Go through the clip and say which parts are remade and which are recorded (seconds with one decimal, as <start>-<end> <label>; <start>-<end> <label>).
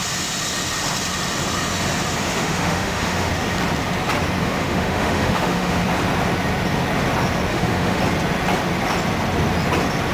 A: 0.0-2.2 recorded; 2.2-3.3 remade; 3.3-4.4 recorded; 4.4-5.8 remade; 5.8-7.5 recorded; 7.5-8.0 remade; 8.0-10.1 recorded